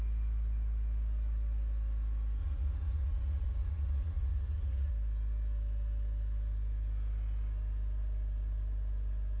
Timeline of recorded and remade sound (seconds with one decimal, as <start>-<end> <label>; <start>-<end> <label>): 0.0-2.4 recorded; 2.4-4.9 remade; 4.9-9.4 recorded